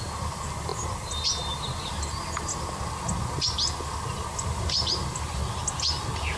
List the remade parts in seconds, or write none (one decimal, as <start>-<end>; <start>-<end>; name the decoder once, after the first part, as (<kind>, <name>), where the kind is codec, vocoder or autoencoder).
4.3-5.4 (vocoder, BigVGAN v2)